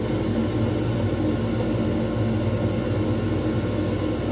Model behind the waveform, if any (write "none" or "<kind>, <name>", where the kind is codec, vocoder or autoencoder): none